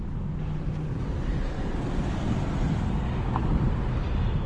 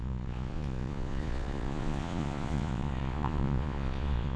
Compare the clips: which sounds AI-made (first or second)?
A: second